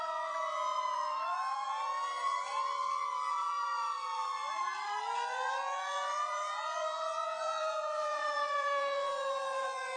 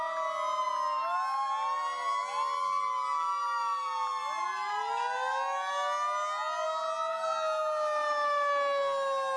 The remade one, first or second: first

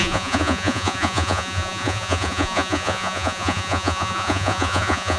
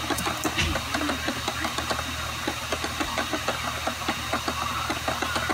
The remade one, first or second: first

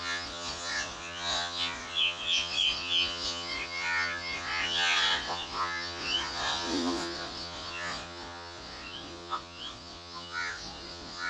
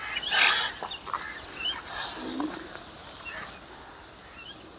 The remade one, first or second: first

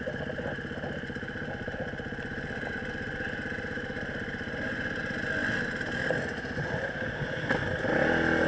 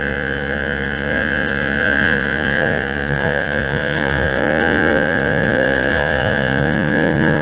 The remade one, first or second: second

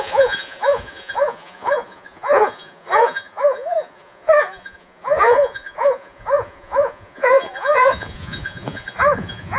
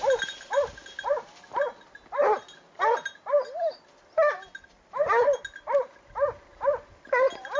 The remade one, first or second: first